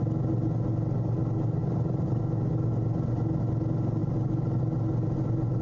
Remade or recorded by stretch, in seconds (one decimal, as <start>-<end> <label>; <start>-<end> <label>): 0.0-1.6 recorded; 1.6-2.2 remade; 2.2-4.0 recorded; 4.0-4.6 remade; 4.6-5.6 recorded